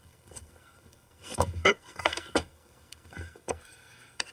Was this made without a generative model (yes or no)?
no